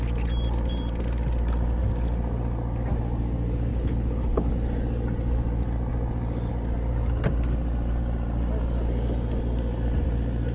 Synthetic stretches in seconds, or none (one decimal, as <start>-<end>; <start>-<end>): 3.7-4.5